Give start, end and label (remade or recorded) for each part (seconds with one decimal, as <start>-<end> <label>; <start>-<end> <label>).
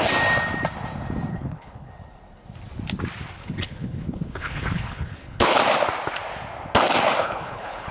0.0-1.3 recorded; 1.3-1.9 remade; 1.9-3.4 recorded; 3.4-5.6 remade; 5.6-7.2 recorded; 7.2-7.9 remade